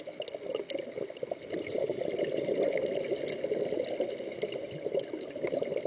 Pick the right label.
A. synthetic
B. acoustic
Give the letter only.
B